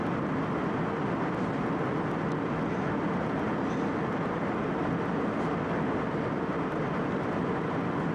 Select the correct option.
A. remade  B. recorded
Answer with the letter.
B